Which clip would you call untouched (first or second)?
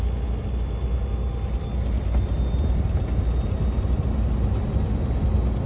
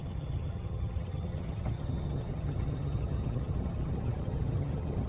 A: first